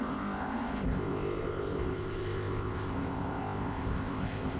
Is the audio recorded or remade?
remade